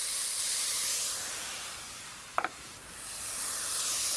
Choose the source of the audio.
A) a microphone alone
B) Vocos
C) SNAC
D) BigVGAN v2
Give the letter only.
D